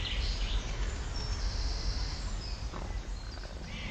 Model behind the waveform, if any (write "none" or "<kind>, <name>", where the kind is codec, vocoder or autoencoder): none